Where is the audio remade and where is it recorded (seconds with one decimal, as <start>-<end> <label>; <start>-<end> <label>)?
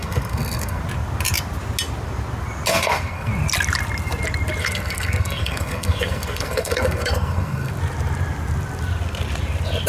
0.0-0.8 remade; 0.8-2.7 recorded; 2.7-3.3 remade; 3.3-4.6 recorded; 4.6-7.7 remade; 7.7-9.9 recorded